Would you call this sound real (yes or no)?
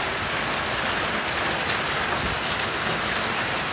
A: yes